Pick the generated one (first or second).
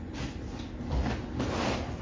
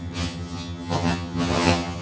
second